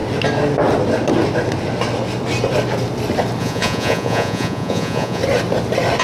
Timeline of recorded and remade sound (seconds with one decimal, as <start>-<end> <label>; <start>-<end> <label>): 0.0-3.4 recorded; 3.4-5.2 remade; 5.2-6.0 recorded